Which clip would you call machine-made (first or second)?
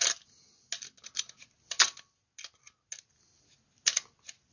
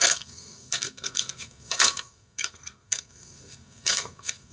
second